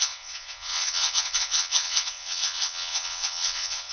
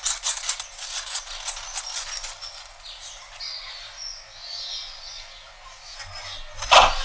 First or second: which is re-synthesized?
first